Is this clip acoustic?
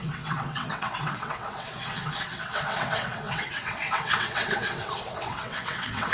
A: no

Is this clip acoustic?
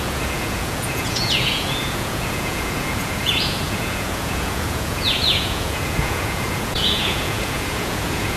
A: no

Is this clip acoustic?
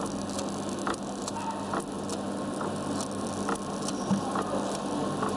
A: yes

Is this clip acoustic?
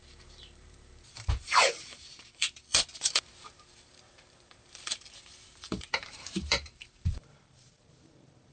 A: no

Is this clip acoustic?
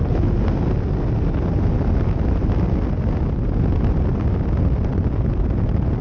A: yes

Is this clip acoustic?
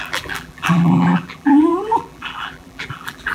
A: no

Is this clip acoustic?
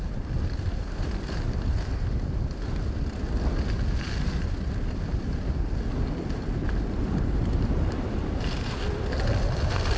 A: yes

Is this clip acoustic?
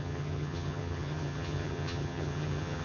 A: no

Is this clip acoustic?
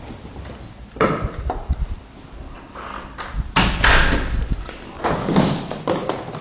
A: yes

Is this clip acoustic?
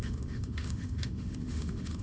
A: no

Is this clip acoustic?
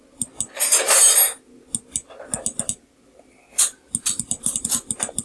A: yes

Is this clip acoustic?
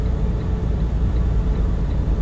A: yes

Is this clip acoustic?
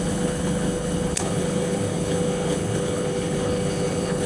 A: no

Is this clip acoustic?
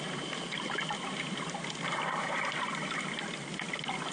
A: yes